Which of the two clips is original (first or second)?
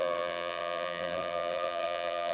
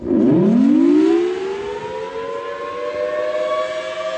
second